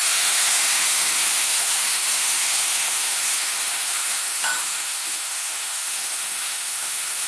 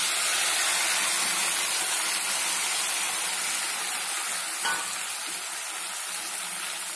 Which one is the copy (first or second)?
first